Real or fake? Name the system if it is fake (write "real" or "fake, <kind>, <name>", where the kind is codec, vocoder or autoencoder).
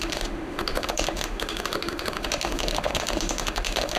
fake, autoencoder, DAC-VAE